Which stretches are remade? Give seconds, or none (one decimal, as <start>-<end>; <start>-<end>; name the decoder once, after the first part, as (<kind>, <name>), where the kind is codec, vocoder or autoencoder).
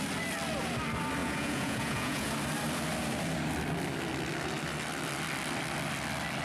1.2-2.3 (vocoder, Vocos)